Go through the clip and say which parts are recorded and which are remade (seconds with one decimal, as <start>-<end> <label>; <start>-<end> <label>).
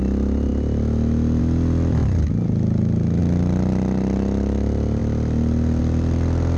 0.0-6.6 recorded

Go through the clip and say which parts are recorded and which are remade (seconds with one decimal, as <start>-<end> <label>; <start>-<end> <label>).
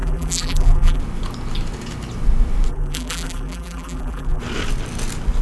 0.0-1.0 remade; 1.0-2.7 recorded; 2.7-4.4 remade; 4.4-5.4 recorded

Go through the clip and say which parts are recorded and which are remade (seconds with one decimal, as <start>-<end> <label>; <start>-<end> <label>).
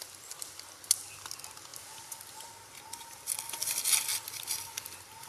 0.0-5.3 recorded